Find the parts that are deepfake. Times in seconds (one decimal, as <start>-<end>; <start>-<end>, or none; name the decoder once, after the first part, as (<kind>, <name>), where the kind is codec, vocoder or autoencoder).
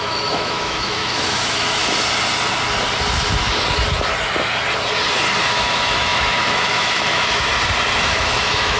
0.0-1.8 (autoencoder, DAC-VAE); 5.4-7.5; 8.0-8.8